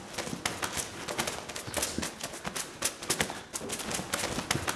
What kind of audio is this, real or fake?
real